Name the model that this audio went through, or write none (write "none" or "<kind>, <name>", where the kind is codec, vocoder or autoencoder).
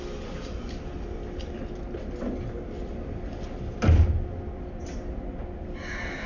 none